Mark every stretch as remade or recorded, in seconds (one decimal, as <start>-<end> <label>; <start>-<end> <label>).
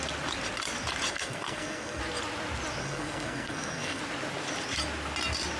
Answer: 0.0-1.1 recorded; 1.1-2.0 remade; 2.0-2.8 recorded; 2.8-4.0 remade; 4.0-5.6 recorded